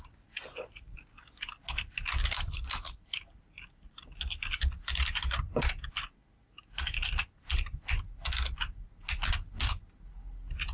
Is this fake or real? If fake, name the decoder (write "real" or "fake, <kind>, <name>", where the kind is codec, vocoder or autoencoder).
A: real